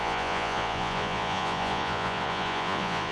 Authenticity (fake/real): fake